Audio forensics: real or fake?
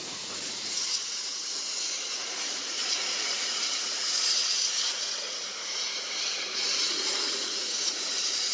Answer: fake